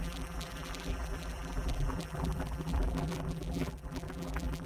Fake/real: fake